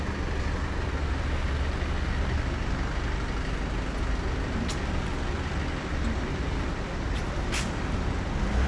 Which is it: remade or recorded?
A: recorded